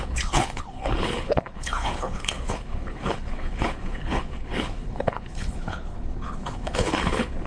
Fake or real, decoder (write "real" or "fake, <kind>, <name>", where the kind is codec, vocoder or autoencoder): fake, codec, HILCodec